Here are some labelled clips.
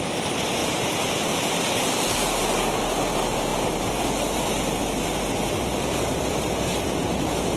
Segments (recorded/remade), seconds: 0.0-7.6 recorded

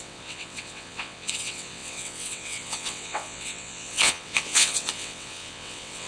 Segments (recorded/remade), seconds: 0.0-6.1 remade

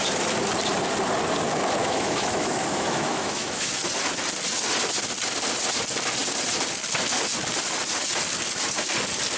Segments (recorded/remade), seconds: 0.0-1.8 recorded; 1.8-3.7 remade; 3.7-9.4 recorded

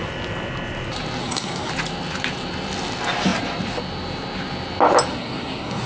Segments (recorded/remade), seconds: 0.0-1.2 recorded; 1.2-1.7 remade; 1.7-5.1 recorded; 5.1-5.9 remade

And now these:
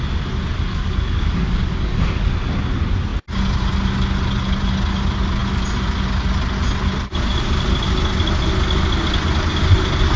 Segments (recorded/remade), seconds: 0.0-0.7 recorded; 0.7-2.3 remade; 2.3-10.2 recorded